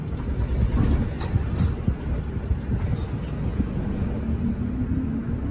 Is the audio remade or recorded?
recorded